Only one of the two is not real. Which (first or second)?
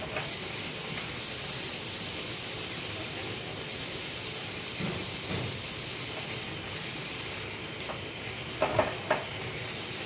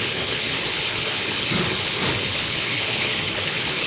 second